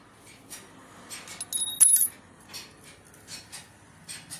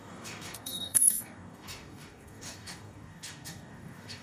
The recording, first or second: first